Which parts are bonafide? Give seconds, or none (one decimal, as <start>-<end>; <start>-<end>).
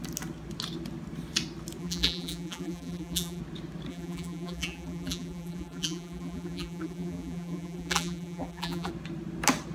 0.0-1.8; 3.4-3.9; 8.9-9.7